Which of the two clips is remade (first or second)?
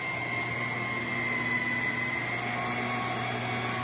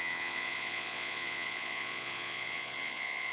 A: second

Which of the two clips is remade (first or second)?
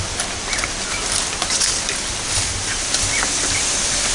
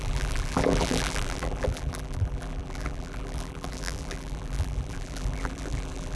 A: second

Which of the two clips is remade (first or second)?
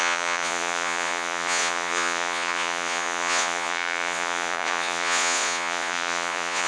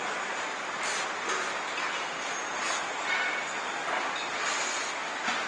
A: first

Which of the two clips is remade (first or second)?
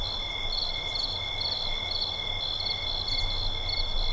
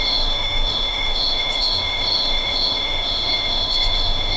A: second